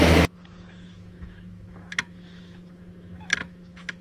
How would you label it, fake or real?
fake